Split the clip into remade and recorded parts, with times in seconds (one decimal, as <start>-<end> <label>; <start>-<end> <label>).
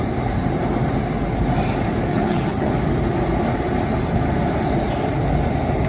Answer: 0.0-2.1 recorded; 2.1-2.7 remade; 2.7-5.9 recorded